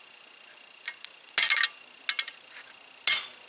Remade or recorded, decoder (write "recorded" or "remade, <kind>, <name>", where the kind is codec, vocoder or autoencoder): recorded